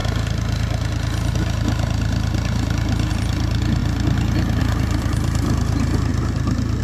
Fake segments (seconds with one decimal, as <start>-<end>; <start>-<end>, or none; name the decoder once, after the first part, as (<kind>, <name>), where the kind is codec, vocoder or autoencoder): 3.1-3.8 (vocoder, BigVGAN v2); 4.6-6.8